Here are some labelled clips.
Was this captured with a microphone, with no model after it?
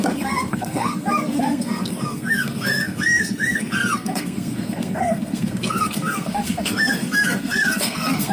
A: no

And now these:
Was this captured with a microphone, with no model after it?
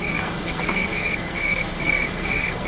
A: no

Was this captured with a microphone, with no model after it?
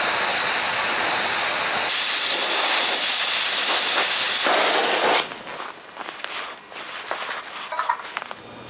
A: yes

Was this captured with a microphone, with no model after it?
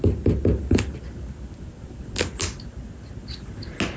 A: yes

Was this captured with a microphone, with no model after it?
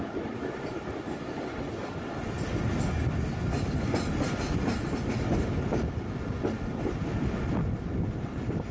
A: yes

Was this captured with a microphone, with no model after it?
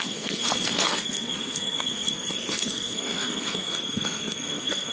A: no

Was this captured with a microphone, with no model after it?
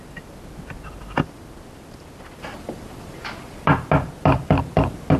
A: yes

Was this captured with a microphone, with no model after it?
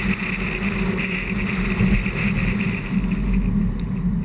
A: yes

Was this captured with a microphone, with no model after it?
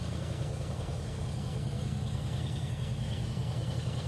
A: no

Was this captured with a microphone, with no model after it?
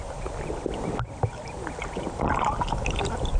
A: yes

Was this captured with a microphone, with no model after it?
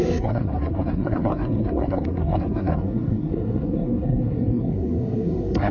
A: no